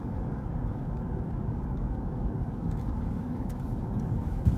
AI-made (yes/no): yes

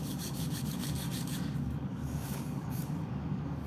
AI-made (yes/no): yes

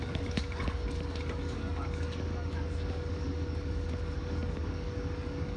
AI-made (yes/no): yes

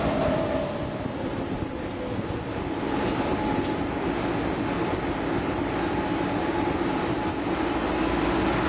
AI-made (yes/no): no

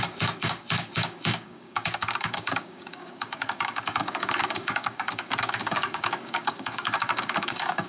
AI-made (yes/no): yes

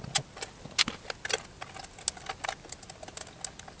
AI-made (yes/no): no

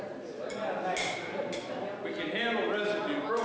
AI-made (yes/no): no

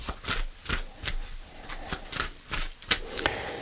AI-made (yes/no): no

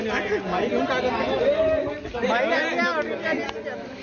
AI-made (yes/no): no